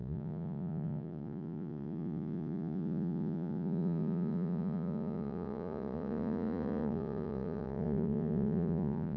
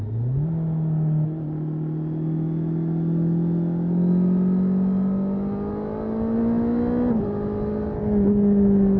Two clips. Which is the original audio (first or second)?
second